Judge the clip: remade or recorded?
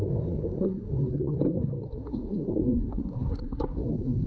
remade